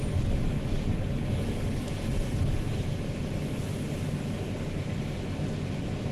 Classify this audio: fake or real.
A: real